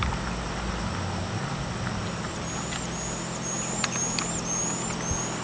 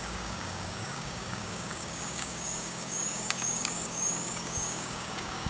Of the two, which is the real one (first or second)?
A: first